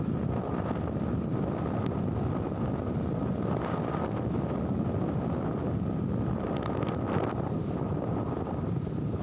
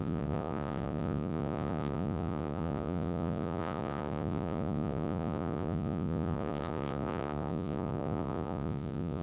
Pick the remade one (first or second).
second